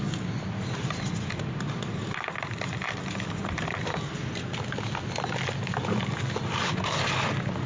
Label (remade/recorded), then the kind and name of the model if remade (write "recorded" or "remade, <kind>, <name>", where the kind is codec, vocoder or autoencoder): recorded